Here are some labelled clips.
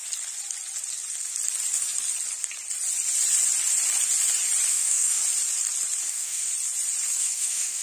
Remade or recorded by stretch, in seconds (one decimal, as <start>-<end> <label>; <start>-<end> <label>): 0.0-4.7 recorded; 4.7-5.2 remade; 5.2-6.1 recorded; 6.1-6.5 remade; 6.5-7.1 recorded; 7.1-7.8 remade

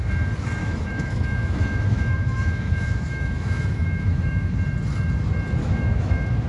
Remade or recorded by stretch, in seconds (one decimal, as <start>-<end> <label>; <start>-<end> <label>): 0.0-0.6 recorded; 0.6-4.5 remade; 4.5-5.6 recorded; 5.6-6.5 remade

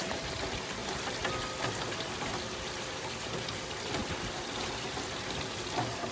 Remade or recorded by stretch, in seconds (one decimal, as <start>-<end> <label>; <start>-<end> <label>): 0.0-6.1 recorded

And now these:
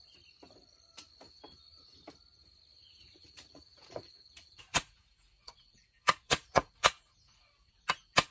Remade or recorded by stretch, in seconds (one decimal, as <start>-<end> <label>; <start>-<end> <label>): 0.0-2.8 recorded; 2.8-7.4 remade; 7.4-8.3 recorded

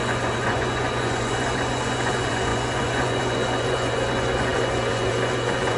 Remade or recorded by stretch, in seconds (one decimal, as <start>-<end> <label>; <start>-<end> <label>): 0.0-5.8 remade

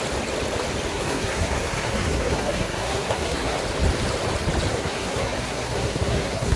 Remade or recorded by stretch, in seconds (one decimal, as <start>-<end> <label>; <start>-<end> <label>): 0.0-0.9 recorded; 0.9-3.6 remade; 3.6-4.7 recorded; 4.7-6.6 remade

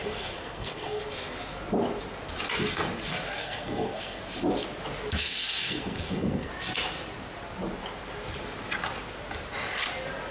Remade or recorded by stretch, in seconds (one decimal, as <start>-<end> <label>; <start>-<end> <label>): 0.0-1.0 remade; 1.0-3.4 recorded; 3.4-4.2 remade; 4.2-5.2 recorded; 5.2-6.5 remade; 6.5-10.3 recorded

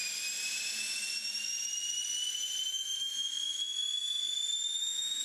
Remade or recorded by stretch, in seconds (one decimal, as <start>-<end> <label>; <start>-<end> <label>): 0.0-2.7 recorded; 2.7-4.2 remade; 4.2-4.8 recorded; 4.8-5.2 remade